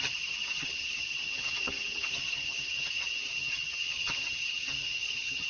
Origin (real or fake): fake